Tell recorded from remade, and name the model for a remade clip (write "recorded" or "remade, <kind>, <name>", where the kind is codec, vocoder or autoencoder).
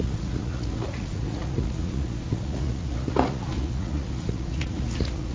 remade, vocoder, Vocos